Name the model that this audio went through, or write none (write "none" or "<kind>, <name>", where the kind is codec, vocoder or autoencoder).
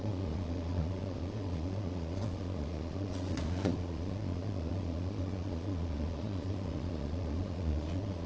vocoder, Vocos